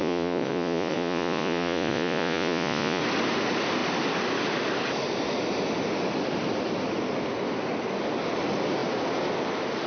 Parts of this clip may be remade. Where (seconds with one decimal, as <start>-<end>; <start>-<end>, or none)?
0.0-3.0